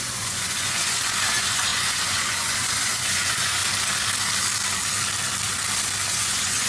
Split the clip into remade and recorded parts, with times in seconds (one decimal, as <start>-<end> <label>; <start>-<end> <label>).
0.0-3.6 remade; 3.6-6.1 recorded; 6.1-6.7 remade